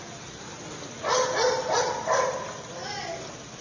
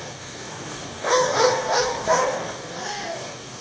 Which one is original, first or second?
first